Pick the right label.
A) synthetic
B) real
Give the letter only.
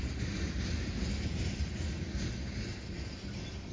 B